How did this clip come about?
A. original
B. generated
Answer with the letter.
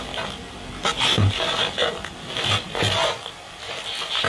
A